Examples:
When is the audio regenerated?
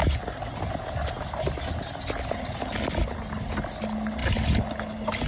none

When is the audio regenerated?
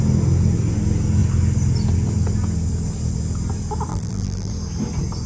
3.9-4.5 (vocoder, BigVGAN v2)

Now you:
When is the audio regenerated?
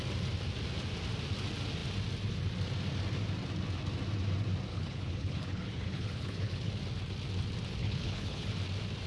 4.7-6.7 (codec, HILCodec); 7.8-8.5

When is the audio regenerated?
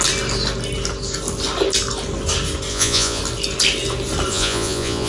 2.7-3.2 (vocoder, Vocos); 4.3-5.1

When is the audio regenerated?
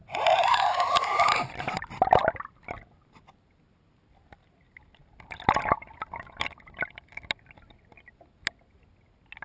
none